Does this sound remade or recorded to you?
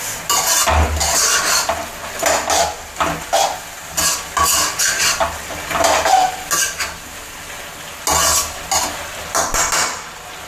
recorded